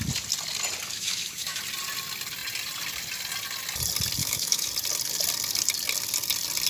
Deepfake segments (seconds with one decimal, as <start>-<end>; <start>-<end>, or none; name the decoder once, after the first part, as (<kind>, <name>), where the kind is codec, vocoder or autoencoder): 0.9-1.6 (autoencoder, DAC-VAE); 4.2-4.7